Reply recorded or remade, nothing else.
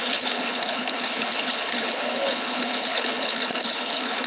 remade